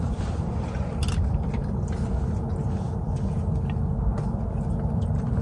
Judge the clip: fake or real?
real